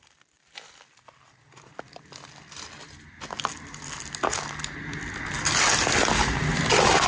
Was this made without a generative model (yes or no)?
yes